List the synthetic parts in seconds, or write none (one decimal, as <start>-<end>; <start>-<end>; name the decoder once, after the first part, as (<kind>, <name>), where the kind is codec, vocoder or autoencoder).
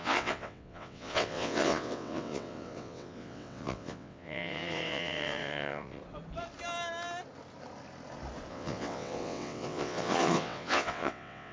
0.0-6.0 (vocoder, WaveNeXt); 8.5-11.5